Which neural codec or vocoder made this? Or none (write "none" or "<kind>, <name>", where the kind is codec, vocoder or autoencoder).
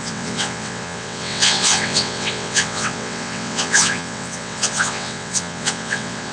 vocoder, WaveNeXt